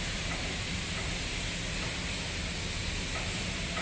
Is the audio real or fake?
real